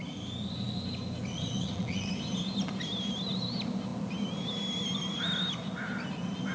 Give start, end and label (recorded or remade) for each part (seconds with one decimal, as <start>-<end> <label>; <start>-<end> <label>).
0.0-1.3 recorded; 1.3-2.1 remade; 2.1-6.5 recorded